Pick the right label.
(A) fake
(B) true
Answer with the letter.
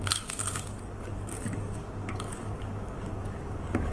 A